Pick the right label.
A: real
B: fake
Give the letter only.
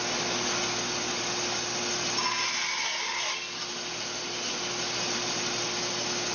A